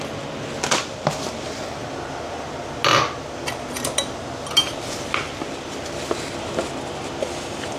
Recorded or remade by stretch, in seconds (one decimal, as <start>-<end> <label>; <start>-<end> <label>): 0.0-7.8 recorded